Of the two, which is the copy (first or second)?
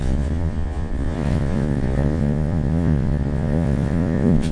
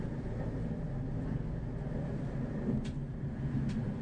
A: first